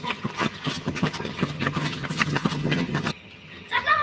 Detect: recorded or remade remade